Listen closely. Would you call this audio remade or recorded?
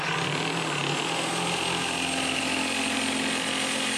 recorded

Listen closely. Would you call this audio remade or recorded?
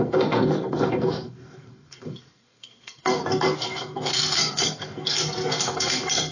remade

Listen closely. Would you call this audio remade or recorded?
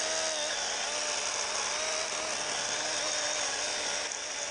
recorded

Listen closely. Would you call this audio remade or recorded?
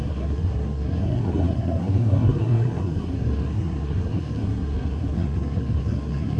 remade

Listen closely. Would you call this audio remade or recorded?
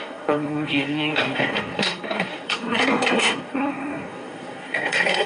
remade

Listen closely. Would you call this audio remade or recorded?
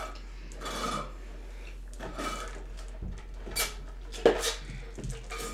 recorded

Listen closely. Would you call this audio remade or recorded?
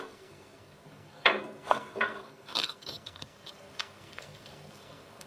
remade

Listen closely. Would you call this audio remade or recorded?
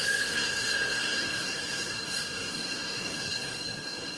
remade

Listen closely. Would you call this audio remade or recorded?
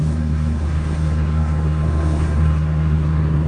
remade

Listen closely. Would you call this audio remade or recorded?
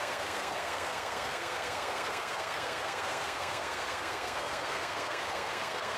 remade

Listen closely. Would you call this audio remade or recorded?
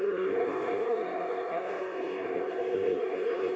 remade